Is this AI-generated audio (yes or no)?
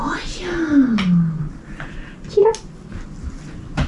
no